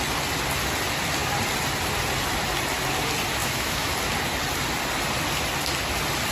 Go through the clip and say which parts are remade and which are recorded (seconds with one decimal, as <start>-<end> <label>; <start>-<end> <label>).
0.0-3.4 recorded; 3.4-3.9 remade; 3.9-6.3 recorded